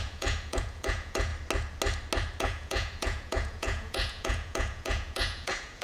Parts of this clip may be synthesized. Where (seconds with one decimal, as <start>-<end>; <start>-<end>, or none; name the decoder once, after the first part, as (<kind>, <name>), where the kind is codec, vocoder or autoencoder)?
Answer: 0.0-1.3 (vocoder, Vocos); 2.4-5.8